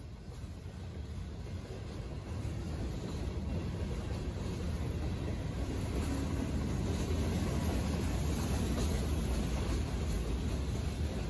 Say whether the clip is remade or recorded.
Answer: recorded